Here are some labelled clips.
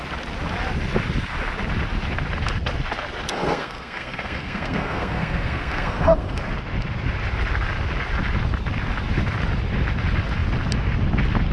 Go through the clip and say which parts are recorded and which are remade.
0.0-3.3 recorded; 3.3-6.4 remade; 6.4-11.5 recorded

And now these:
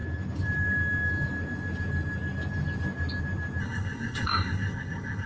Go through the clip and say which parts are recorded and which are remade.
0.0-3.6 recorded; 3.6-5.3 remade

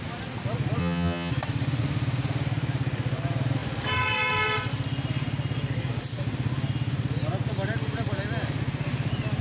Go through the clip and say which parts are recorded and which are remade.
0.0-0.8 recorded; 0.8-1.3 remade; 1.3-9.4 recorded

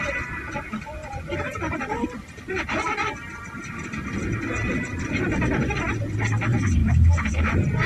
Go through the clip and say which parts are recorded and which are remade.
0.0-6.8 recorded; 6.8-7.5 remade; 7.5-7.9 recorded